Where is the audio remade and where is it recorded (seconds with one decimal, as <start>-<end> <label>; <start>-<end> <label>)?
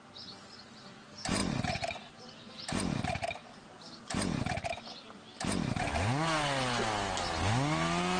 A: 0.0-8.2 recorded